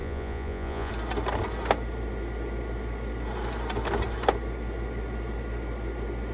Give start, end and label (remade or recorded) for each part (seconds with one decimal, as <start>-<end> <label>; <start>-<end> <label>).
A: 0.0-0.9 remade; 0.9-6.3 recorded